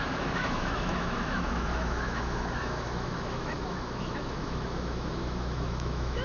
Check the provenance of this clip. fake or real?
fake